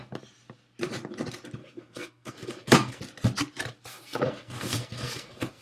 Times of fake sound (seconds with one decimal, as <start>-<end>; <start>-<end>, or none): 1.6-3.0; 3.9-5.6